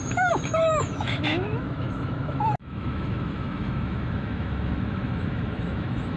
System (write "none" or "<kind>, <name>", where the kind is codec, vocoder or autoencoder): autoencoder, DAC-VAE